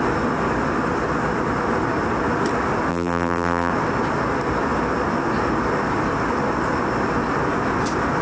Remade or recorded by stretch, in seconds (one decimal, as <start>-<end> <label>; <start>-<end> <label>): 0.0-2.9 recorded; 2.9-3.7 remade; 3.7-8.2 recorded